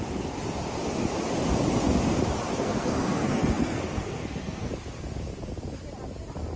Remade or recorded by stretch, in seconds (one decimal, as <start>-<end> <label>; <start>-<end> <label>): 0.0-2.5 recorded; 2.5-4.7 remade; 4.7-6.6 recorded